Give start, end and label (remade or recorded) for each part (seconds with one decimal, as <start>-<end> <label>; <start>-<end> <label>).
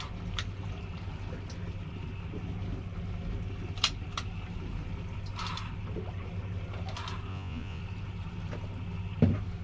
0.0-7.3 recorded; 7.3-7.8 remade; 7.8-9.6 recorded